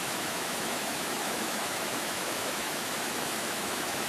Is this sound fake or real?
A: fake